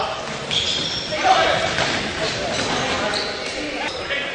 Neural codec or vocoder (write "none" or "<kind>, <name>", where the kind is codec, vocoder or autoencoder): none